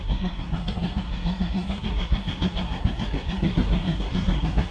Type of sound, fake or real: fake